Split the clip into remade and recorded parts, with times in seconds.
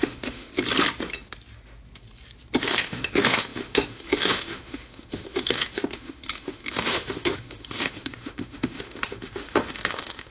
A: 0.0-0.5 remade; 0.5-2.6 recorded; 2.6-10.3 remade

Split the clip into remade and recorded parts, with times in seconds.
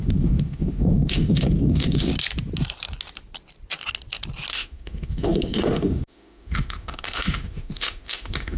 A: 0.0-2.1 remade; 2.1-4.5 recorded; 4.5-8.6 remade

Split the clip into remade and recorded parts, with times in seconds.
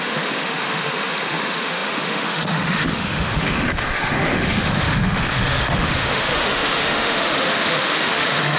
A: 0.0-8.6 remade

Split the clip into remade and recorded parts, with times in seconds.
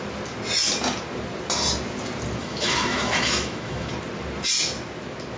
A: 0.0-2.4 recorded; 2.4-3.9 remade; 3.9-5.4 recorded